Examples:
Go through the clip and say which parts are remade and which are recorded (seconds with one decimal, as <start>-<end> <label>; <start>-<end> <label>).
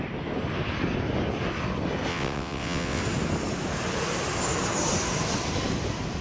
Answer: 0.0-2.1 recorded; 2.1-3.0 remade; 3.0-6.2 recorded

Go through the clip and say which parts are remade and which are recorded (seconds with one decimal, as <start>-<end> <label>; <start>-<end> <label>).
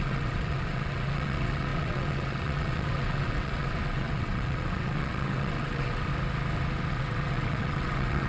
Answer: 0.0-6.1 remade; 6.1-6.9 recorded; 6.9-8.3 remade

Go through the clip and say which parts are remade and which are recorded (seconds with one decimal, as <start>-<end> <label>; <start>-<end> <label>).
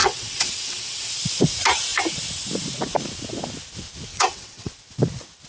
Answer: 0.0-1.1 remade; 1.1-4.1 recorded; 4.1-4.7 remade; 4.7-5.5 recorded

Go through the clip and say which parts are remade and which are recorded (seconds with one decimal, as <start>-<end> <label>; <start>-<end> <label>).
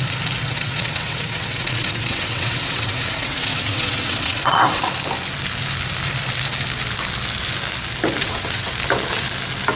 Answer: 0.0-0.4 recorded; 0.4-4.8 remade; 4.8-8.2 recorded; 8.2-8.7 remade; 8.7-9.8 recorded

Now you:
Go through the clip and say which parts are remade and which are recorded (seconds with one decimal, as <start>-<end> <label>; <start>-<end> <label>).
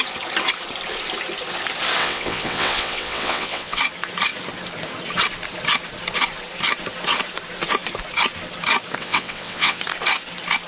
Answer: 0.0-2.0 recorded; 2.0-3.8 remade; 3.8-9.0 recorded; 9.0-9.8 remade; 9.8-10.7 recorded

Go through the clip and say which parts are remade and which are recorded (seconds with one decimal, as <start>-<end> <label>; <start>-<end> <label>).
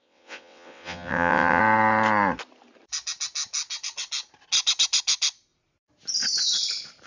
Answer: 0.0-1.6 remade; 1.6-7.1 recorded